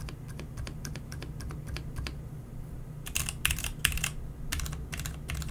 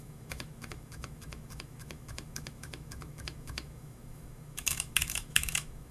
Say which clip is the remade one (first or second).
second